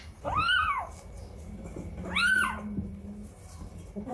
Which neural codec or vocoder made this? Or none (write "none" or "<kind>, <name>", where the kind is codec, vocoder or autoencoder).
none